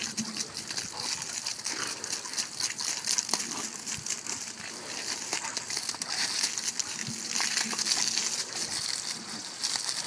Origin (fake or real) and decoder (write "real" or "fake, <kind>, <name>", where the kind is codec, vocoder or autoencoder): real